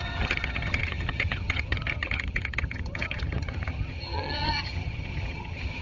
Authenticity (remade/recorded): remade